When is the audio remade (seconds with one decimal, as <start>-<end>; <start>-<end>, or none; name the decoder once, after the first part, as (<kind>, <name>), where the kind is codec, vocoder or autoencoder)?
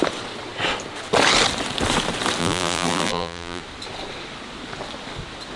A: 2.4-3.6 (vocoder, BigVGAN v2)